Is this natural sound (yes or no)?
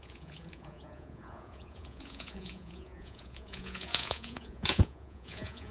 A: no